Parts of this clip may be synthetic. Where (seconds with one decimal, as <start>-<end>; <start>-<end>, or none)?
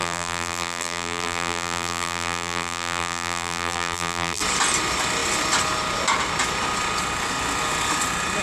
0.0-4.4